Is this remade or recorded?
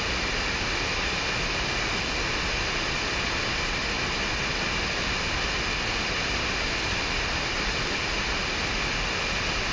recorded